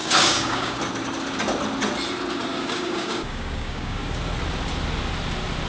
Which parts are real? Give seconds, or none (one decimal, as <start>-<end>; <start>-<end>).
0.8-2.5; 4.0-5.7